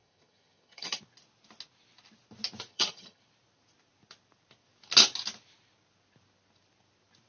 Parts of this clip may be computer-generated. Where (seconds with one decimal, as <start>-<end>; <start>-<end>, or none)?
0.0-1.0; 2.7-3.2